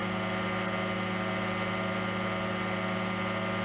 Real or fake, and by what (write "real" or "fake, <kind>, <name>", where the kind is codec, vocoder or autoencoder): real